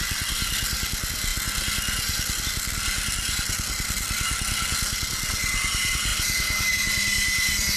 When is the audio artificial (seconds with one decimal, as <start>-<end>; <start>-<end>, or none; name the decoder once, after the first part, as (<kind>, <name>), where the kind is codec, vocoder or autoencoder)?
0.0-1.3 (vocoder, BigVGAN v2); 2.4-7.8